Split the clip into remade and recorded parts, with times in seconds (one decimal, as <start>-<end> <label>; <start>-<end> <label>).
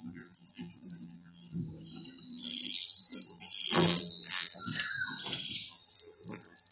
0.0-1.6 remade; 1.6-2.3 recorded; 2.3-4.7 remade; 4.7-5.7 recorded; 5.7-6.7 remade